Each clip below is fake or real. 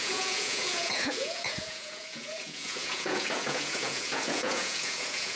fake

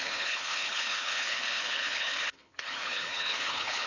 fake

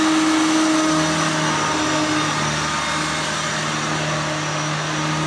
real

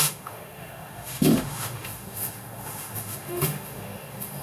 fake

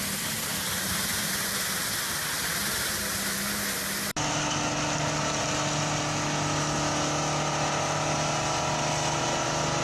real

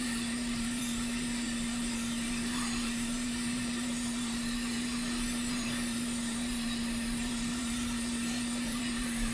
fake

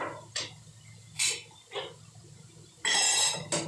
real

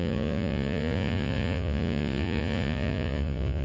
fake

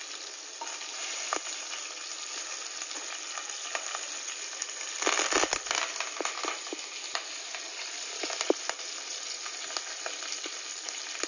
real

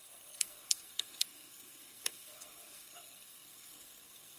fake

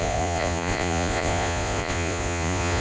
fake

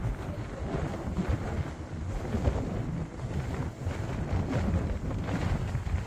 real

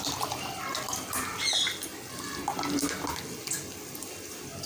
real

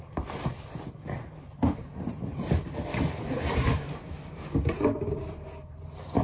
fake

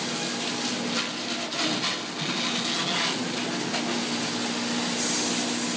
real